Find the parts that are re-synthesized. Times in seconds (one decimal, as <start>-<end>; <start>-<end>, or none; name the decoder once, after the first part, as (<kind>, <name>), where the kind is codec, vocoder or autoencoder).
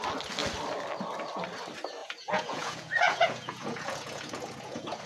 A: 2.0-5.1 (vocoder, Vocos)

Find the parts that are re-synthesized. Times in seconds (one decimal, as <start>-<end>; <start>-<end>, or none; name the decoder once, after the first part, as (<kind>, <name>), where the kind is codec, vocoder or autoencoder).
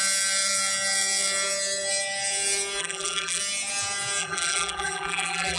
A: 2.8-3.4 (vocoder, BigVGAN v2); 4.2-5.6